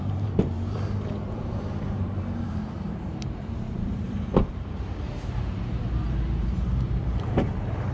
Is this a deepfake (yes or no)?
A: yes